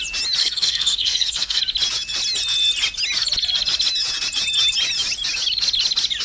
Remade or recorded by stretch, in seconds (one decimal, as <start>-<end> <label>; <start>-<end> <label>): 0.0-0.4 recorded; 0.4-1.6 remade; 1.6-6.2 recorded